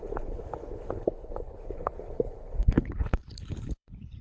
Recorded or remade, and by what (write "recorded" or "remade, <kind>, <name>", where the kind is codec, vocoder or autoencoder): remade, codec, HILCodec